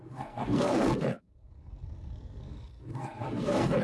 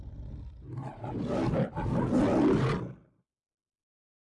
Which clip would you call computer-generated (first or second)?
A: first